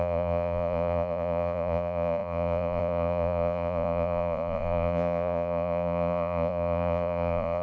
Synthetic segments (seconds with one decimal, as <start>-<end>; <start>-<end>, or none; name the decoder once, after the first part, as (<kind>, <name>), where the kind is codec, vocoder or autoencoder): 0.0-7.6 (vocoder, Vocos)